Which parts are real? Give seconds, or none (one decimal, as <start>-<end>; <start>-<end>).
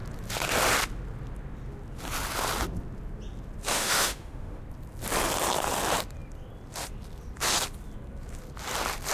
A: 0.0-3.7; 4.6-9.1